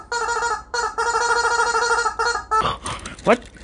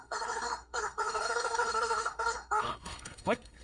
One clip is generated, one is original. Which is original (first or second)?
first